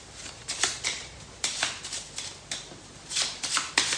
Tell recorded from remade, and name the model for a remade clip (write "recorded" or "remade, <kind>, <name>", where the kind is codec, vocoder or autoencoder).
remade, vocoder, BigVGAN v2